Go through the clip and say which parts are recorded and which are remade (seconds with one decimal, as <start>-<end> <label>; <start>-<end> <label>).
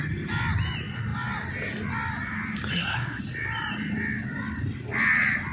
0.0-2.7 recorded; 2.7-3.2 remade; 3.2-5.5 recorded